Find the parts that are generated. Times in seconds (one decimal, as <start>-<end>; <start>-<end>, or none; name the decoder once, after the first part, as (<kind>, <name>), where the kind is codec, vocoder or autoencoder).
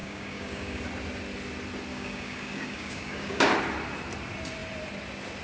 0.0-0.8 (codec, DAC); 1.9-3.5